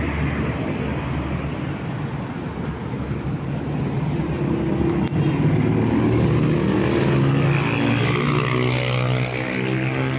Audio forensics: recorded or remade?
recorded